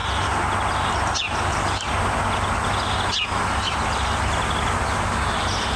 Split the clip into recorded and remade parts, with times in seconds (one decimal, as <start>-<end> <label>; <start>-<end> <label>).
0.0-5.8 recorded